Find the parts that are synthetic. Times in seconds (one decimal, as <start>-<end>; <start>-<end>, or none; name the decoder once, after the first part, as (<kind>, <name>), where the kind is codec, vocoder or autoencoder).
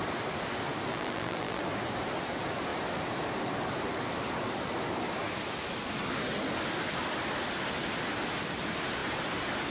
0.9-1.6 (vocoder, BigVGAN v2)